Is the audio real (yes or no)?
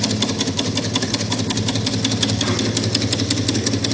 yes